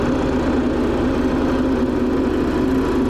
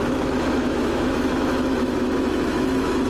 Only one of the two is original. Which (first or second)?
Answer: first